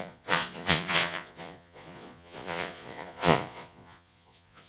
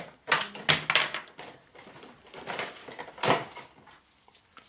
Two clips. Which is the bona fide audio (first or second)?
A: second